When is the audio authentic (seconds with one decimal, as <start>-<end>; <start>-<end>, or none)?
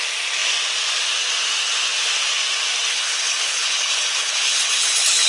0.0-2.9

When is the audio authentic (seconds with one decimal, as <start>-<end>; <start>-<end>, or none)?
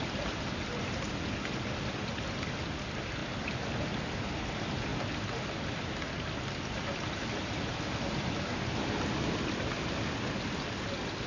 0.0-11.3